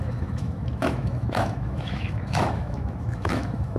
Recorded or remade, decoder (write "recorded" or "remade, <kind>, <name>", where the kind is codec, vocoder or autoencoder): remade, autoencoder, DAC-VAE